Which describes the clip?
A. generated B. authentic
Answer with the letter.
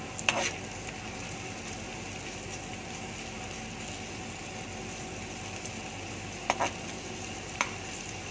B